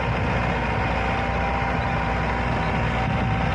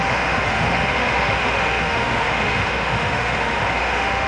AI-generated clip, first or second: second